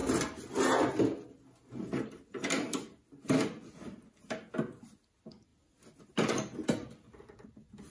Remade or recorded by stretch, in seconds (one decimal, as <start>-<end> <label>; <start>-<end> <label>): 0.0-7.9 recorded